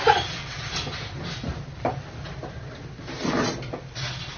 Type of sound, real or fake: real